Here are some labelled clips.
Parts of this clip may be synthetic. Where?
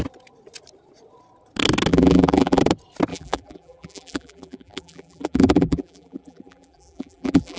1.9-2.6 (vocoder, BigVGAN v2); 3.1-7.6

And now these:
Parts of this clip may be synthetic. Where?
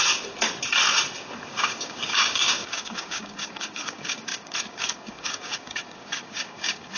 1.5-7.0 (codec, DAC)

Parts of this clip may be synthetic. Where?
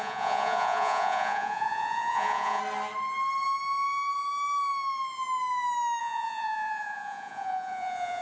0.0-2.6 (vocoder, Vocos); 6.0-8.2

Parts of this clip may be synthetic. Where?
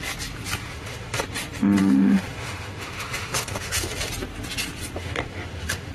0.7-1.2 (autoencoder, DAC-VAE); 1.8-4.1; 5.0-5.9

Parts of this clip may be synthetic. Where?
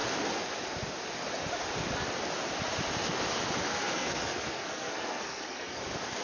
3.7-5.8 (codec, SNAC)